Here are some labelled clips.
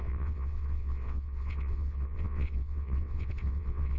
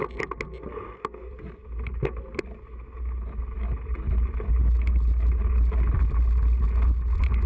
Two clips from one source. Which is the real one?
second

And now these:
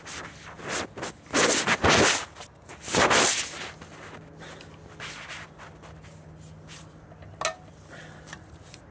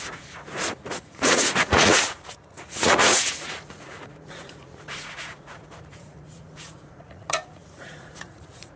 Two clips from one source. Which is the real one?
first